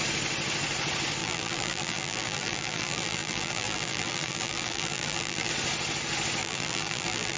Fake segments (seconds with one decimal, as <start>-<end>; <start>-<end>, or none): 1.2-5.5; 6.4-7.4